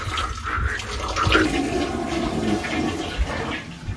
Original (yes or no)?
yes